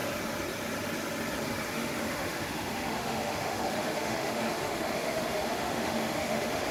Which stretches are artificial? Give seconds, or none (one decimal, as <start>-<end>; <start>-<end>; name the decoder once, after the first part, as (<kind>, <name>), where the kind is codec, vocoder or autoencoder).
1.7-6.7 (autoencoder, DAC-VAE)